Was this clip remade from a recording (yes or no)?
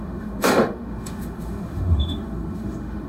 yes